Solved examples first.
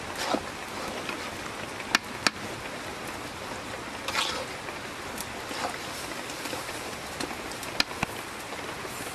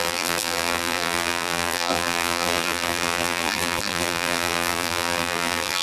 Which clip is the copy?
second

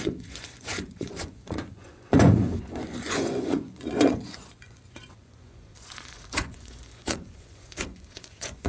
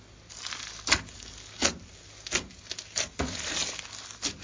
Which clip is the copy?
first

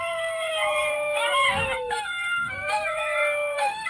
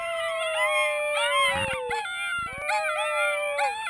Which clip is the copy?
first